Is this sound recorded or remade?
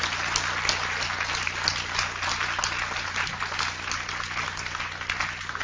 recorded